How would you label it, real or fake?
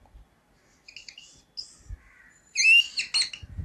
real